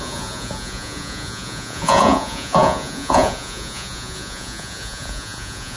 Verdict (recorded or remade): remade